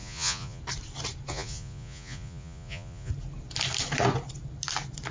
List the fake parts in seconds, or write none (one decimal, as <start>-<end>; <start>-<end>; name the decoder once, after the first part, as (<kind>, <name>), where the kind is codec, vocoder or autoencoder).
0.0-0.6 (vocoder, Vocos); 1.3-3.1